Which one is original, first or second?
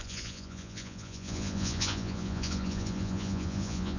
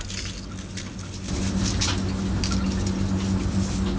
second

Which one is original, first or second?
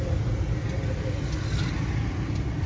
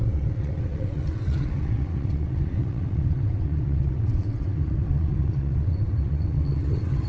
first